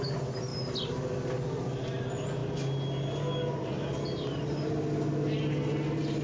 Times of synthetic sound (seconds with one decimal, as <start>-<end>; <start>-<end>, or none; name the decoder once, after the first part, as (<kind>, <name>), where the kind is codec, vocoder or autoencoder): none